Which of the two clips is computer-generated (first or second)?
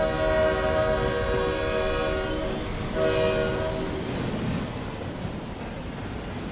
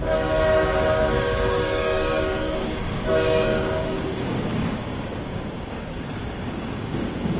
second